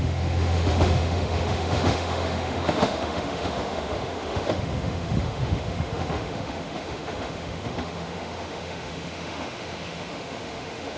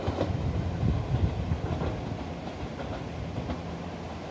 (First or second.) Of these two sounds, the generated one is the first